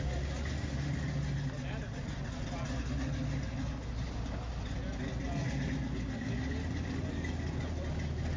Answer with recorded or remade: recorded